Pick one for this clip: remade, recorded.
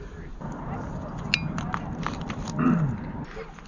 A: recorded